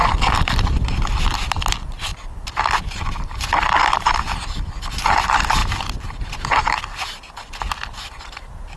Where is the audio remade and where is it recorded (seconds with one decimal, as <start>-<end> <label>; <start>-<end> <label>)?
0.0-8.8 recorded